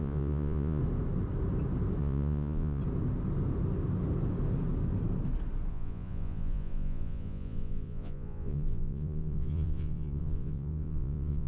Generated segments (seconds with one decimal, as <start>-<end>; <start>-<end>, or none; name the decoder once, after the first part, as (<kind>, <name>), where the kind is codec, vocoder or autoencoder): 0.0-0.8 (vocoder, Vocos); 2.0-2.8; 5.7-11.5